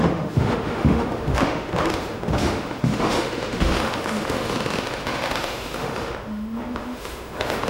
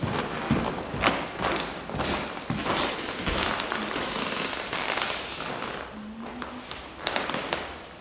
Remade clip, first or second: first